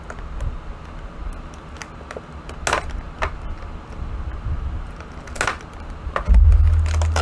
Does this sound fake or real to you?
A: real